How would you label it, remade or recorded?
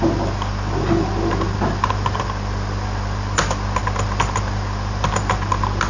recorded